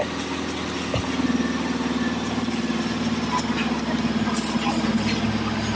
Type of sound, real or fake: real